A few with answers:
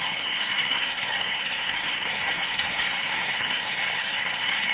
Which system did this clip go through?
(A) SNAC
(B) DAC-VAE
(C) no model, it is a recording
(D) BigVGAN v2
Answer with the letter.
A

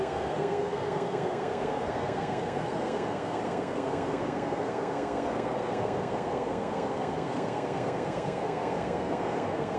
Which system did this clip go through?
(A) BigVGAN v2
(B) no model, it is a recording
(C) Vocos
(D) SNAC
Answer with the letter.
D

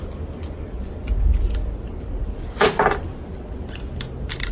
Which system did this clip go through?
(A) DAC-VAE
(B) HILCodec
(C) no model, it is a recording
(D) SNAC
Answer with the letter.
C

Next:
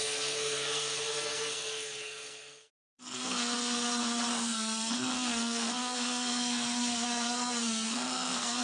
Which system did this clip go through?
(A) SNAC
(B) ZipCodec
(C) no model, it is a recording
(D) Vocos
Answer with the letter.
A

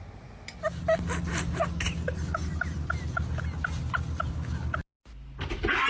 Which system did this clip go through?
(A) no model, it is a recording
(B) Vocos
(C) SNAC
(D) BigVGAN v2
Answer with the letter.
A